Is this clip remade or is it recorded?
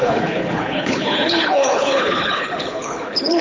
remade